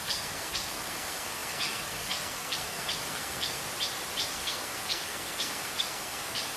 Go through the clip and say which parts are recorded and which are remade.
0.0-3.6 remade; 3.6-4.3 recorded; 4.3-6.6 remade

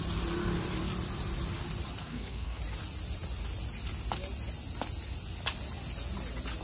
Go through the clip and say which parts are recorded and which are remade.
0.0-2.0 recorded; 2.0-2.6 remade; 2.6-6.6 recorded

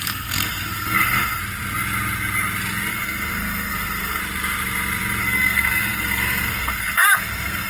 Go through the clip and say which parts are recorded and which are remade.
0.0-1.4 remade; 1.4-2.9 recorded; 2.9-4.2 remade; 4.2-5.2 recorded; 5.2-7.7 remade

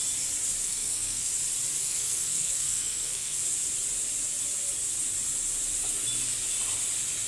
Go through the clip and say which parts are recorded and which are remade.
0.0-0.6 recorded; 0.6-1.3 remade; 1.3-1.8 recorded; 1.8-3.4 remade; 3.4-7.3 recorded

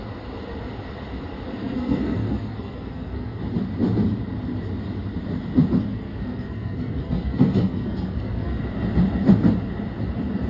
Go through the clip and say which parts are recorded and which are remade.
0.0-1.6 recorded; 1.6-3.4 remade; 3.4-5.9 recorded; 5.9-8.6 remade; 8.6-10.5 recorded

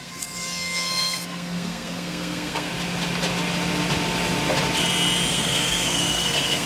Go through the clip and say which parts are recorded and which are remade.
0.0-2.7 remade; 2.7-5.3 recorded; 5.3-6.7 remade